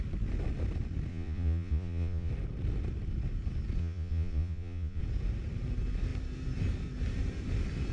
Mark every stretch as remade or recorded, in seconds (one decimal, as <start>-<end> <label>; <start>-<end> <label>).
0.0-1.1 recorded; 1.1-2.3 remade; 2.3-3.8 recorded; 3.8-5.0 remade; 5.0-7.9 recorded